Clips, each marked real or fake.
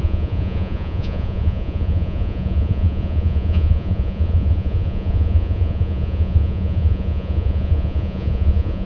fake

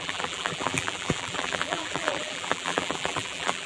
fake